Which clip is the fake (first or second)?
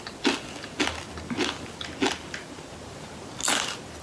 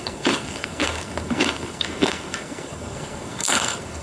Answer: second